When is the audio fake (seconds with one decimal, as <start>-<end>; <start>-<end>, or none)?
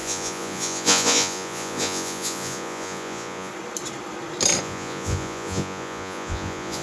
0.0-3.5; 4.6-6.8